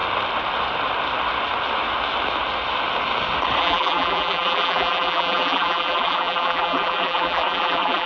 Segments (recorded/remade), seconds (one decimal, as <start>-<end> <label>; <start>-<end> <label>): 0.0-3.6 recorded; 3.6-8.1 remade